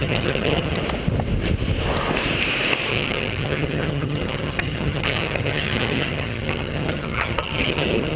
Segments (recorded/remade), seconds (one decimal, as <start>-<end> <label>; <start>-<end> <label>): 0.0-0.8 remade; 0.8-2.9 recorded; 2.9-8.2 remade